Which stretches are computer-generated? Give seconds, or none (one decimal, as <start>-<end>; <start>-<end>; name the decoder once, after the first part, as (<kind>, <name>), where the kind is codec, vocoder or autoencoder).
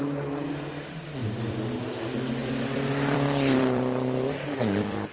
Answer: 1.2-1.8 (vocoder, BigVGAN v2); 2.4-5.1